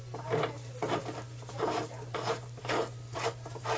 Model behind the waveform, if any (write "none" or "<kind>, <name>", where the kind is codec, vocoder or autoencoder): none